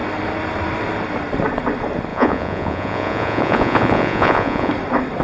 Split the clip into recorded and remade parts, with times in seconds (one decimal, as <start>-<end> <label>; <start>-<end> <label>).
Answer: 0.0-2.1 recorded; 2.1-4.7 remade; 4.7-5.2 recorded